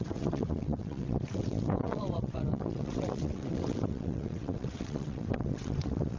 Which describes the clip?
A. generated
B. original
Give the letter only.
A